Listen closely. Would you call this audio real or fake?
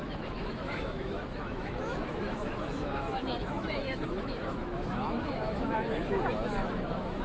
fake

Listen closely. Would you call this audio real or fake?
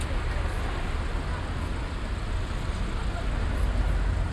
real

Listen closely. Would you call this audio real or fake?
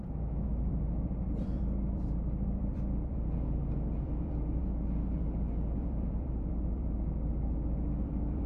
fake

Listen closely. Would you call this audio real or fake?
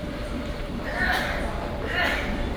fake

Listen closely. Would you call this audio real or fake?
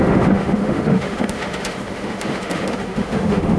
fake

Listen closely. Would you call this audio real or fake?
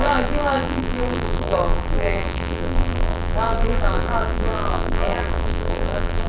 fake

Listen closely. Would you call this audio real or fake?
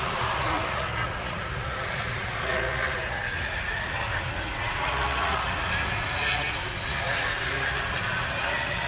fake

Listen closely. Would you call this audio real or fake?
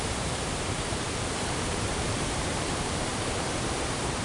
fake